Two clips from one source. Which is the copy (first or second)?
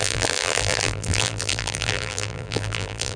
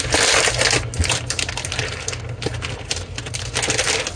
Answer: first